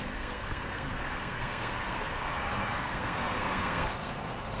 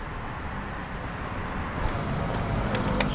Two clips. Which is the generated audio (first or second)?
first